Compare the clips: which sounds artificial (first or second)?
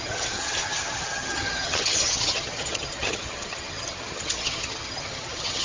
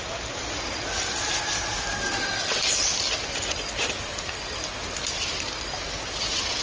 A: first